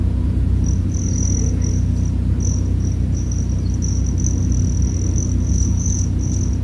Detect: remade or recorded recorded